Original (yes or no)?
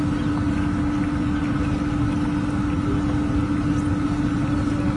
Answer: yes